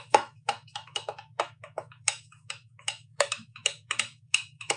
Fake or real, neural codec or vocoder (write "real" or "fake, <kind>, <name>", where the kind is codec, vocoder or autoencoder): fake, autoencoder, DAC-VAE